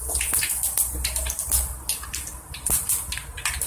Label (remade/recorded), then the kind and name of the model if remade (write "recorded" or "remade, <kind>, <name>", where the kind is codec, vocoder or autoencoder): remade, vocoder, BigVGAN v2